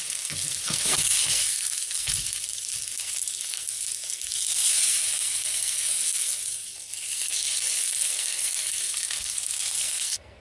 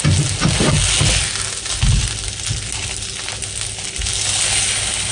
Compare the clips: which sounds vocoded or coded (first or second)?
first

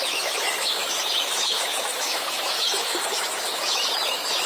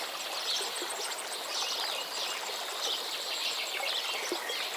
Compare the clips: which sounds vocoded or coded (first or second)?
first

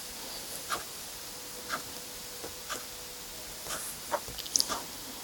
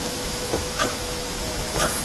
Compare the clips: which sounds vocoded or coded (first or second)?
second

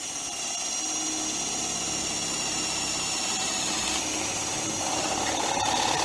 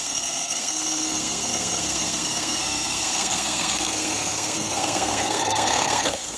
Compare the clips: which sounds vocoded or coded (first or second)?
second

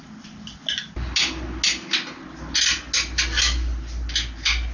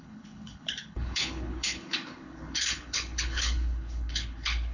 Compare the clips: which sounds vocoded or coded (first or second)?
second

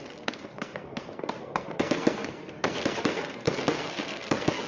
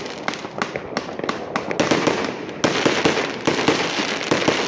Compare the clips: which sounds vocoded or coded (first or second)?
first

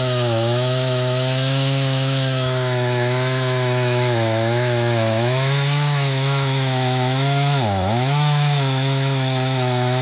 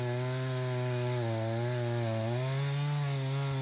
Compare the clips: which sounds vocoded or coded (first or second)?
first